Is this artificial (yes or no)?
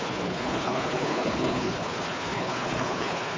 yes